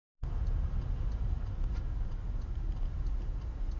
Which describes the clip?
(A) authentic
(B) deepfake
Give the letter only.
A